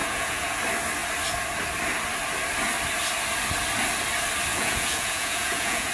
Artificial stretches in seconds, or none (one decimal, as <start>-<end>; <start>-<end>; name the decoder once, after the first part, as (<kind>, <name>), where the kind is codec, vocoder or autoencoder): 0.0-0.6 (vocoder, Vocos); 4.5-5.9